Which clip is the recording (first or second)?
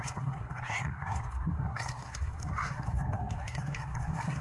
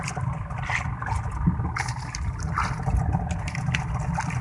second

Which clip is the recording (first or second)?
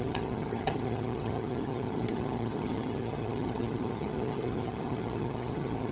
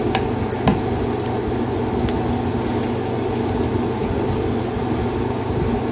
second